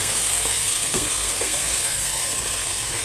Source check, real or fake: fake